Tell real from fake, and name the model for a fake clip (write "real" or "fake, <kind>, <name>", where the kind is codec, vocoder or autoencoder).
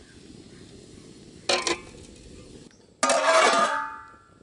real